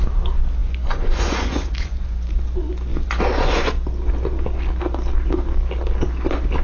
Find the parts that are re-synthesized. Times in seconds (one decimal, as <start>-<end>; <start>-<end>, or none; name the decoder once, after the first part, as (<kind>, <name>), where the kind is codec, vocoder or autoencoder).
0.6-2.3 (vocoder, Vocos); 2.9-3.7